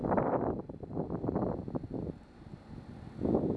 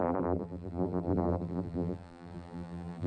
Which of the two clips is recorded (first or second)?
first